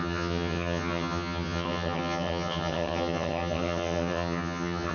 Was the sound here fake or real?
fake